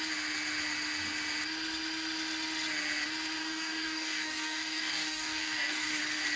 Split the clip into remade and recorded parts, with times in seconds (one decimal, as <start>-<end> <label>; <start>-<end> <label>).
0.0-3.4 recorded; 3.4-6.0 remade; 6.0-6.4 recorded